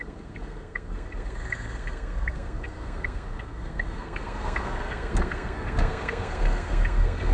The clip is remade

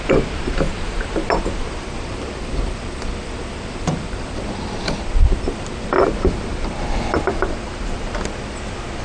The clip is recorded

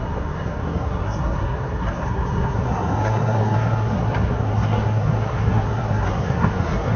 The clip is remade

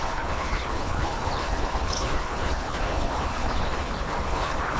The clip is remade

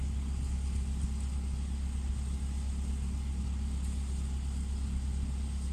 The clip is recorded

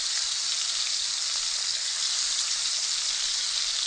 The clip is recorded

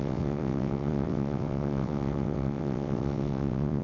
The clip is remade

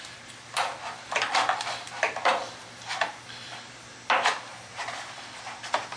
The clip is recorded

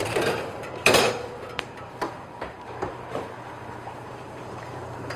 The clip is remade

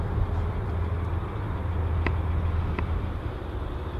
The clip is recorded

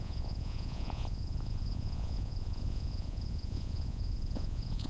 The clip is remade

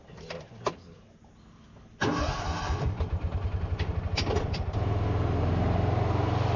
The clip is recorded